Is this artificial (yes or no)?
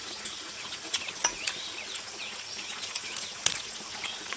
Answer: yes